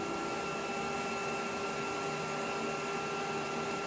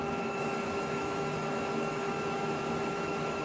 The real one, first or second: first